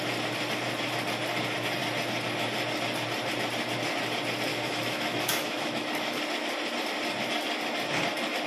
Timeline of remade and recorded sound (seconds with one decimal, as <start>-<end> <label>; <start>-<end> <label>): 0.0-4.5 recorded; 4.5-6.2 remade; 6.2-8.5 recorded